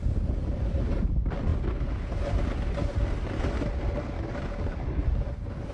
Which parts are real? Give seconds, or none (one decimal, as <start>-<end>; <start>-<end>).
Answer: 0.0-5.7